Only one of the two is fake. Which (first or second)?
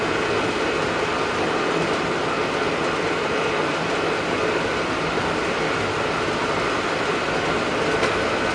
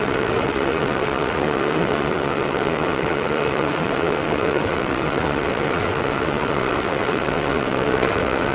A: second